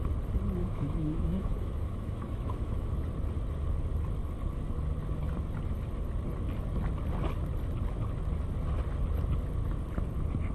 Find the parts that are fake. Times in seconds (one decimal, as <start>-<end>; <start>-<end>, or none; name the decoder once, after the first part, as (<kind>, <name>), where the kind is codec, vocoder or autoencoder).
0.6-2.9 (autoencoder, DAC-VAE)

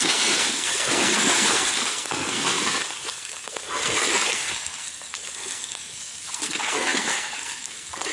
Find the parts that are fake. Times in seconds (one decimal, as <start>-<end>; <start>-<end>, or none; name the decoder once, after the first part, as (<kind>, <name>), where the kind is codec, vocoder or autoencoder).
0.0-8.1 (codec, SNAC)

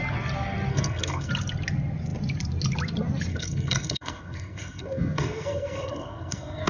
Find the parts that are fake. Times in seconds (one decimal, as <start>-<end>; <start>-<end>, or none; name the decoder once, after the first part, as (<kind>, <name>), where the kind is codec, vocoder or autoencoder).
0.7-1.3 (codec, SNAC); 3.3-6.7

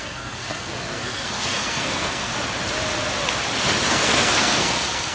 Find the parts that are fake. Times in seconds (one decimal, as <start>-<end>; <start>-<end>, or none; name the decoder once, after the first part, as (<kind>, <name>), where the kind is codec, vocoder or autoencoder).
0.0-2.3 (codec, SNAC); 3.9-5.1